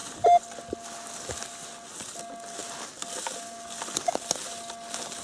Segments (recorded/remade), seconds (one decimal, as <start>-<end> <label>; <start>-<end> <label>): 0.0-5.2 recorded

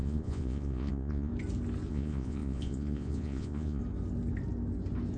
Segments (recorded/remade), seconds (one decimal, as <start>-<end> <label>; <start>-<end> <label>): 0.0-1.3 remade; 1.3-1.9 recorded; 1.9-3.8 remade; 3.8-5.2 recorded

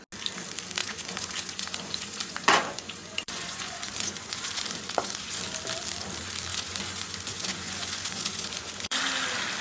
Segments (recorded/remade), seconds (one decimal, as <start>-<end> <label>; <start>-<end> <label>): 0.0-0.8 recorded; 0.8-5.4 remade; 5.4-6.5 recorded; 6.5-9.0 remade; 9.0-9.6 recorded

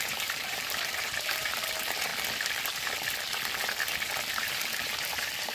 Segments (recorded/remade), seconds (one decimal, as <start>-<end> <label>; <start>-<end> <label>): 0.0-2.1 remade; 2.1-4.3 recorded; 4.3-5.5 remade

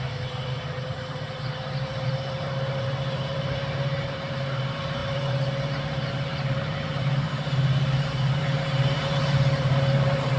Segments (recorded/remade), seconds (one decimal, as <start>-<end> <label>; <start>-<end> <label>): 0.0-10.4 remade

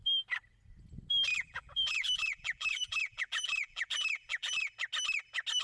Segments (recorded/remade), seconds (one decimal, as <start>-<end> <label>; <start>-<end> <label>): 0.0-1.3 recorded; 1.3-4.7 remade; 4.7-5.6 recorded

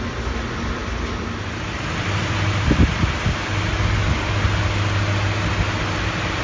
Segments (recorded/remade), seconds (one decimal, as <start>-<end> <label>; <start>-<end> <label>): 0.0-0.8 recorded; 0.8-3.0 remade; 3.0-6.4 recorded